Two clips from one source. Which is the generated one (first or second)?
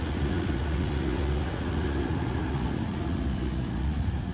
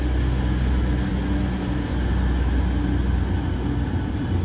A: first